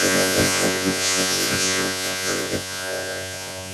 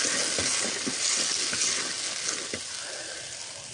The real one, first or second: second